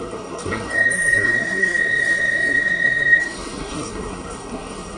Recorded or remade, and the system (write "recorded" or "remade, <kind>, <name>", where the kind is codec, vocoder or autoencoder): remade, codec, SNAC